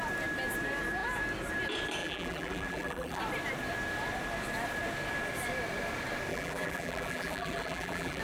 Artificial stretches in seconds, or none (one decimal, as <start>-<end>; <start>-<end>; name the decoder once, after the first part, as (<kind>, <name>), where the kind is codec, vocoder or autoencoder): 2.0-3.2 (vocoder, BigVGAN v2); 6.3-8.2